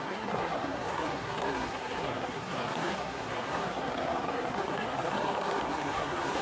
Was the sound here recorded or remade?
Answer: remade